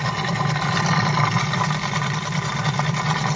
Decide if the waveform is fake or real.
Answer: real